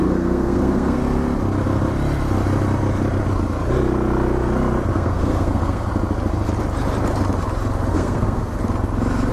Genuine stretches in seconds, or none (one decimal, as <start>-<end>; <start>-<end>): 1.0-4.9; 5.9-7.9; 8.5-9.3